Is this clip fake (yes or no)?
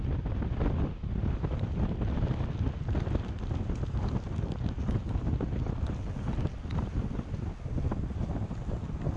no